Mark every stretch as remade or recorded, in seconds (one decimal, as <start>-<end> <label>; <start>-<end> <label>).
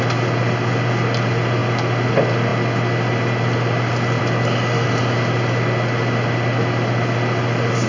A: 0.0-7.9 recorded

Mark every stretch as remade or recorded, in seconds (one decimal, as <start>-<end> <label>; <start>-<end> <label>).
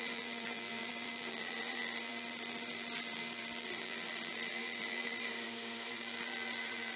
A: 0.0-5.3 remade; 5.3-5.9 recorded; 5.9-7.0 remade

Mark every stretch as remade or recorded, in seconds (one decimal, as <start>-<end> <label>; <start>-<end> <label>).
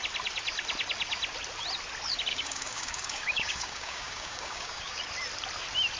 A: 0.0-2.3 recorded; 2.3-5.0 remade; 5.0-6.0 recorded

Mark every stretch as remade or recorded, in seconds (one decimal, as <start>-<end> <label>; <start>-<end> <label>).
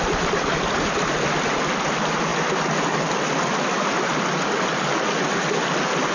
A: 0.0-6.1 recorded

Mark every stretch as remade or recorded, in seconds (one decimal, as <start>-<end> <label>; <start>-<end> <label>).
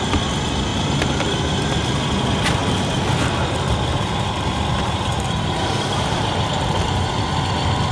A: 0.0-0.7 recorded; 0.7-1.9 remade; 1.9-3.9 recorded; 3.9-6.3 remade; 6.3-7.9 recorded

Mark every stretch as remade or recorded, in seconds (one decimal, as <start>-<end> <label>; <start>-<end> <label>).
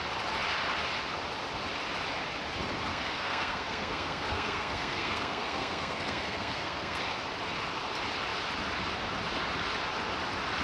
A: 0.0-2.9 recorded; 2.9-7.0 remade; 7.0-10.6 recorded